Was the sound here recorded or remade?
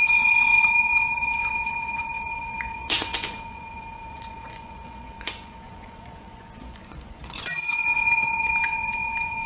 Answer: remade